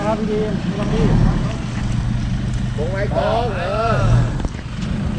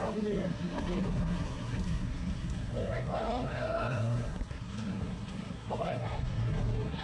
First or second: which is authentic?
first